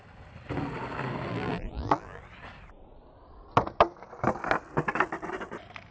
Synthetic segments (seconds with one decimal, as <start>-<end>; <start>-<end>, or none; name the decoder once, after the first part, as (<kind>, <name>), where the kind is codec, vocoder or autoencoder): 1.3-2.2 (vocoder, BigVGAN v2)